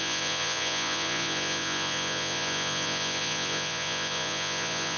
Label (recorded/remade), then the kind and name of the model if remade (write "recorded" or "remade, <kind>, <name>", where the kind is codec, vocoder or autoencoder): remade, vocoder, Vocos